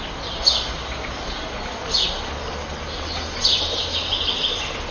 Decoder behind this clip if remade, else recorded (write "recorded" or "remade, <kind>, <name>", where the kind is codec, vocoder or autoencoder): recorded